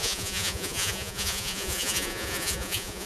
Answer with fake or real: fake